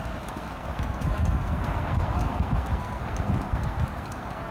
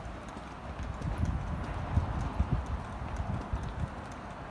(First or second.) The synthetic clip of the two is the first